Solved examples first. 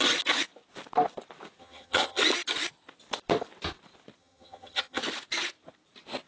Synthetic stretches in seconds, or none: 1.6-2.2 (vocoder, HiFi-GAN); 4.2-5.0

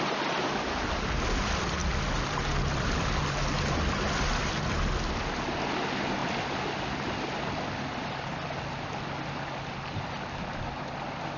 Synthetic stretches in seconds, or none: none

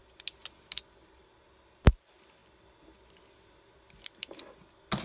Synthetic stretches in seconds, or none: none